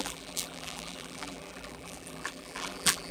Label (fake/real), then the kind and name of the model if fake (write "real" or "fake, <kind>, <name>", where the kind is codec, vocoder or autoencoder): fake, vocoder, BigVGAN v2